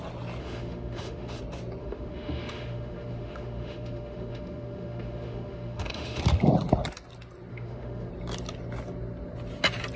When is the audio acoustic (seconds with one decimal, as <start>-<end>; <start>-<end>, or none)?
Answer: 0.0-0.4; 1.4-1.8; 6.2-7.5; 8.1-10.0